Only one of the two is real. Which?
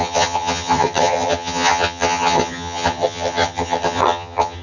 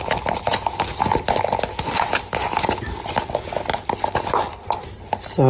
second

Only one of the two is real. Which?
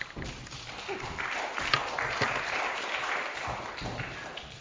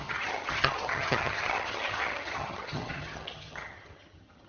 first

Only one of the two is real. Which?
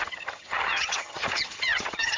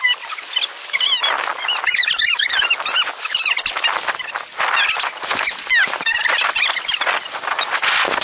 second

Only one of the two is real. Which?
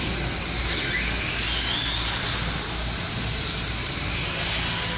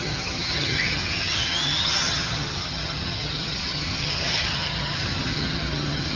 first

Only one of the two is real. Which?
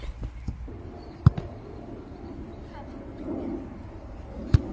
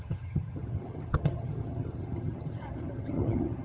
first